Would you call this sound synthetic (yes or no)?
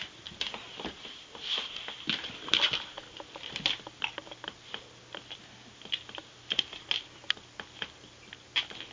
no